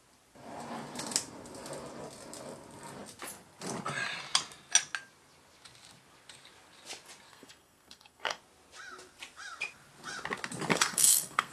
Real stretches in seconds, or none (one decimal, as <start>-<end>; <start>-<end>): 0.0-7.3; 8.4-10.7